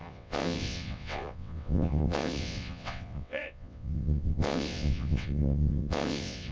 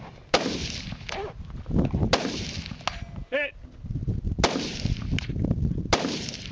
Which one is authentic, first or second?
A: second